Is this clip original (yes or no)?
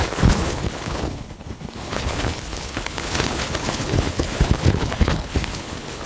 no